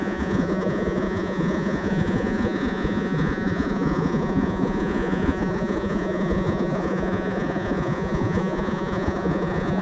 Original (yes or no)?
no